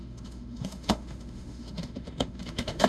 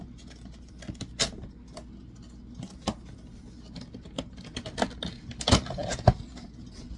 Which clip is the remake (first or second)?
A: first